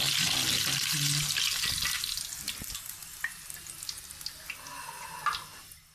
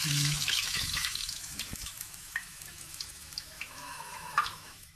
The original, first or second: first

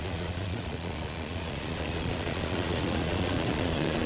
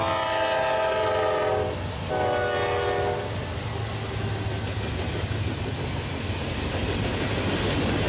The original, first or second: second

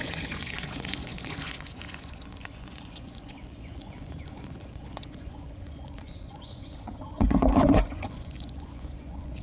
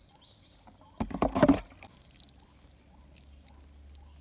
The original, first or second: second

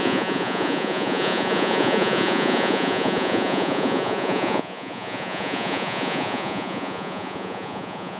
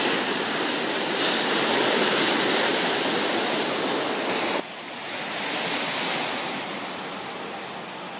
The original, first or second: second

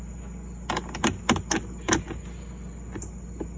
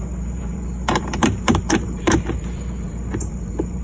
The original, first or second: first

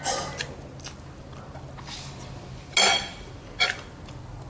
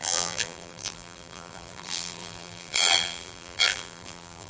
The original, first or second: first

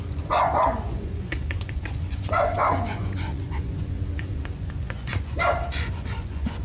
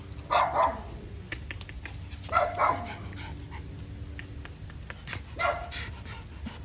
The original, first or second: second